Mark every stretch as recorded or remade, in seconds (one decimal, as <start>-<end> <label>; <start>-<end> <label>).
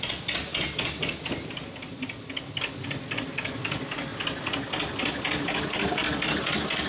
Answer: 0.0-6.9 recorded